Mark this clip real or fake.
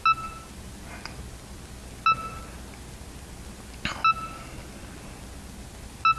real